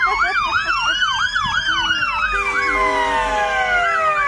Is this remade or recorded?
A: recorded